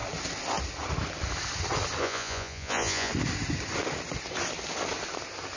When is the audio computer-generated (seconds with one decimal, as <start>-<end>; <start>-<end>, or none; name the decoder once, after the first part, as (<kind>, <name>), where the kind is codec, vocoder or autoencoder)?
2.0-3.1 (vocoder, Vocos)